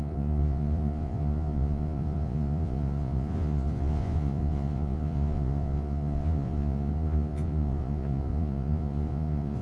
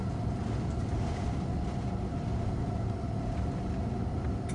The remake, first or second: first